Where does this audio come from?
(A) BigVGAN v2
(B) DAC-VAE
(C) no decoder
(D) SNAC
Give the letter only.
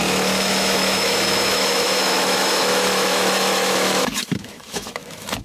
B